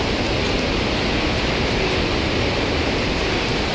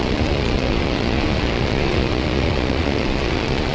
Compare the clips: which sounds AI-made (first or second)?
second